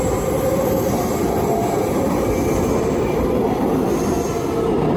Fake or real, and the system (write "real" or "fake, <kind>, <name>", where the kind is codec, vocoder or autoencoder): real